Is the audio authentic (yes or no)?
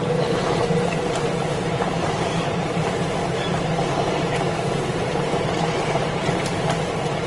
no